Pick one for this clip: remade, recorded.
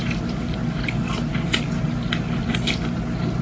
recorded